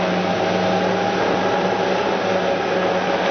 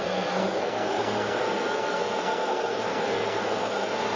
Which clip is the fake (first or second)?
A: second